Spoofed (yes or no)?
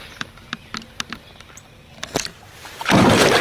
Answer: no